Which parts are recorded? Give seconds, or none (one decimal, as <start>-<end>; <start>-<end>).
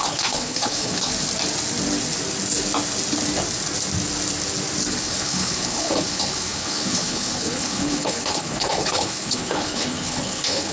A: 1.1-5.0